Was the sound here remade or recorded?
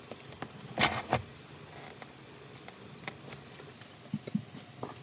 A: recorded